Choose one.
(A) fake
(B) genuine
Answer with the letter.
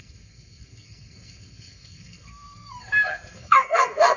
A